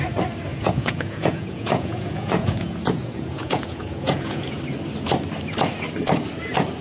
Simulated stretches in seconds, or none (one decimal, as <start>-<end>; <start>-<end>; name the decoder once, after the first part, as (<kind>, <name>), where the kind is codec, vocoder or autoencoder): 0.5-4.6 (vocoder, Vocos)